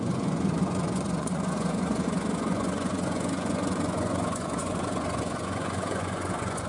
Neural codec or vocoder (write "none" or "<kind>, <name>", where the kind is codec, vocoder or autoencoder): vocoder, Vocos